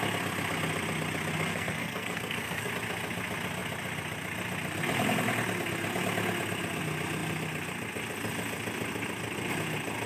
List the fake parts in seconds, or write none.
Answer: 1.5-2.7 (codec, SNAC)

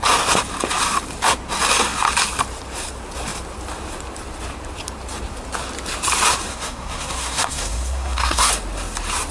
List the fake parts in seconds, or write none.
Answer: 6.5-8.5 (codec, SNAC)

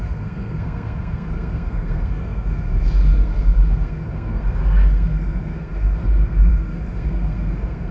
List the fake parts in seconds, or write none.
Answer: 0.0-7.9 (codec, SNAC)

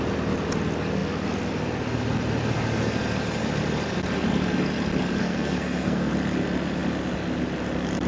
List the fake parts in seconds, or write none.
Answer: 5.2-6.1 (codec, SNAC)

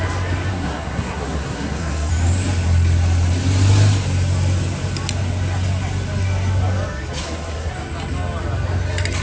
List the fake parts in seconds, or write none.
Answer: 0.5-2.1 (codec, SNAC); 7.2-7.7